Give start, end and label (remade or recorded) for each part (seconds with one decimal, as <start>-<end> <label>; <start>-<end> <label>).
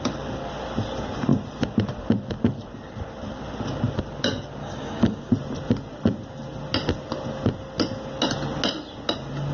0.0-4.6 recorded; 4.6-5.3 remade; 5.3-9.5 recorded